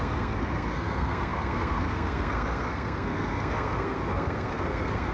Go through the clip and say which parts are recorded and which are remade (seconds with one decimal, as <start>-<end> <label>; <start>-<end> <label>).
0.0-5.1 remade

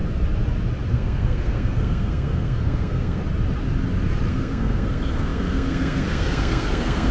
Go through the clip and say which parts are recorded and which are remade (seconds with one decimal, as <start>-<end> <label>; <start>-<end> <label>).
0.0-0.9 recorded; 0.9-3.2 remade; 3.2-4.3 recorded; 4.3-7.1 remade

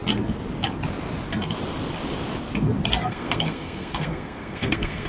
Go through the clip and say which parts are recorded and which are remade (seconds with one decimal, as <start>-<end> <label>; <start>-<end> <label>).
0.0-3.1 recorded; 3.1-5.1 remade

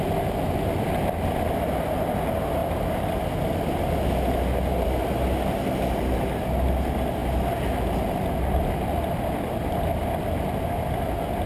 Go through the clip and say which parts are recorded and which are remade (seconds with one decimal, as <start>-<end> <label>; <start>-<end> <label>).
0.0-11.5 recorded